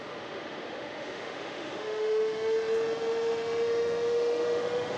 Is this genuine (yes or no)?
no